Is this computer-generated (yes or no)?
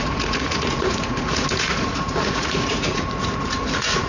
yes